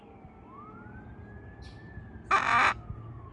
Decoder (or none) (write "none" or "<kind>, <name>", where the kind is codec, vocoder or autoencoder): none